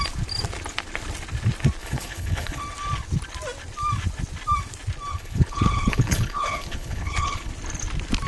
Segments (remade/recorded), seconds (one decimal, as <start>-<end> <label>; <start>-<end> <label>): 0.0-1.8 recorded; 1.8-2.6 remade; 2.6-5.1 recorded; 5.1-7.5 remade; 7.5-8.3 recorded